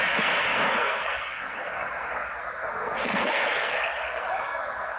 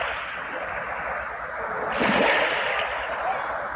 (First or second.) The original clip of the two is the second